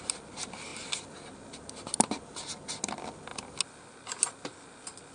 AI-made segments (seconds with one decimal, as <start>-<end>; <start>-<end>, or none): none